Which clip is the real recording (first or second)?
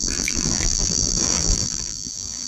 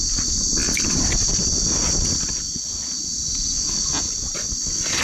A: second